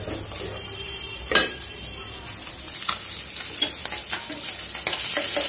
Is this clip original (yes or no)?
yes